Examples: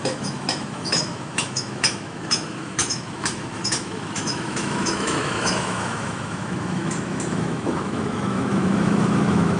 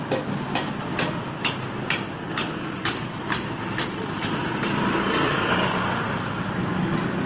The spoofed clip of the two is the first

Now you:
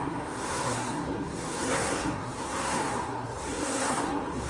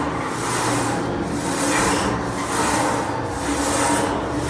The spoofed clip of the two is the first